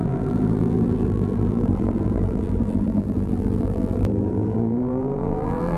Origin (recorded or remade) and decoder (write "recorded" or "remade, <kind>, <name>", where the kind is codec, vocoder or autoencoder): remade, vocoder, BigVGAN v2